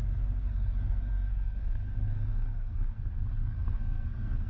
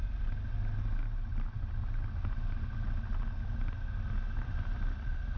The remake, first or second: first